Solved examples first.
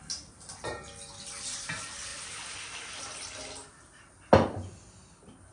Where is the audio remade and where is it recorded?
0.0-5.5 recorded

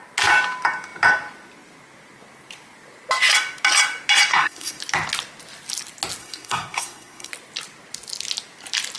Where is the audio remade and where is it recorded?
0.0-4.3 recorded; 4.3-4.8 remade; 4.8-6.2 recorded; 6.2-7.3 remade; 7.3-9.0 recorded

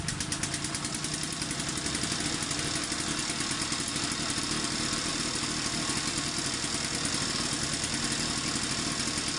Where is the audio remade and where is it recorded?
0.0-9.4 recorded

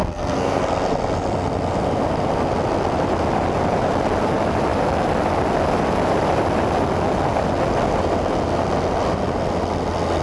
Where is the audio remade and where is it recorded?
0.0-0.6 remade; 0.6-10.2 recorded

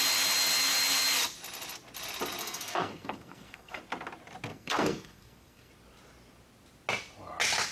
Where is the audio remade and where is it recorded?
0.0-2.4 recorded; 2.4-3.8 remade; 3.8-4.5 recorded; 4.5-5.7 remade; 5.7-7.7 recorded

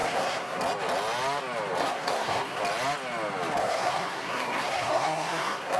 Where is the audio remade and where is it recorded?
0.0-0.6 remade; 0.6-1.8 recorded; 1.8-2.6 remade; 2.6-3.6 recorded; 3.6-5.8 remade

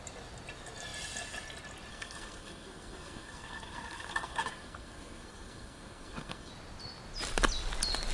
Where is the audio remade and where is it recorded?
0.0-1.9 recorded; 1.9-6.5 remade; 6.5-8.1 recorded